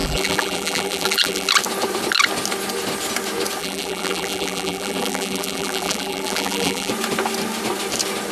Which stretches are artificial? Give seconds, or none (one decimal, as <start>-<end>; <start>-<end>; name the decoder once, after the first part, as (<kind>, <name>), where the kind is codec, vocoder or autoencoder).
0.0-1.5 (vocoder, BigVGAN v2); 3.6-6.9

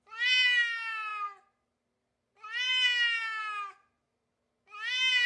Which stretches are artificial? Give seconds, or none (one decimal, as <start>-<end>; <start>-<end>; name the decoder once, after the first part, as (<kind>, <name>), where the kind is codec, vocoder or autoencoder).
none

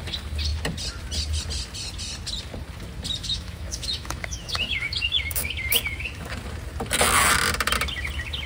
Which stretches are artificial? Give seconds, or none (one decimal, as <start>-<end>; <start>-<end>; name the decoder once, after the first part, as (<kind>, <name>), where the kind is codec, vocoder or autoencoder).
3.2-6.3 (autoencoder, DAC-VAE)

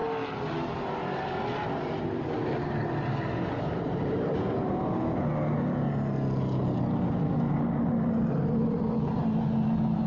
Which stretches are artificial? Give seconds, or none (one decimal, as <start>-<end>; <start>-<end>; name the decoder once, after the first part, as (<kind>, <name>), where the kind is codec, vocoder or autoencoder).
none

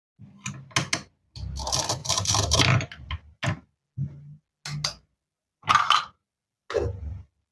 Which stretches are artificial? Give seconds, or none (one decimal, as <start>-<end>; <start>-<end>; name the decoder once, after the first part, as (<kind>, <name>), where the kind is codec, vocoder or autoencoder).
2.0-3.1 (vocoder, BigVGAN v2)